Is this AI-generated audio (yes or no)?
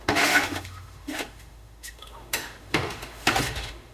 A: yes